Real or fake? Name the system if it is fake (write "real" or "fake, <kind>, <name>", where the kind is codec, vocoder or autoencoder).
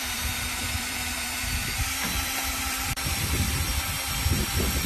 fake, vocoder, BigVGAN v2